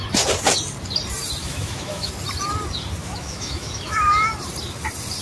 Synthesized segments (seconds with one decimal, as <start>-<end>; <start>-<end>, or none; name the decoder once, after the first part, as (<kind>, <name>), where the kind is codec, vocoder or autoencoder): 1.4-2.1 (autoencoder, DAC-VAE); 3.0-4.3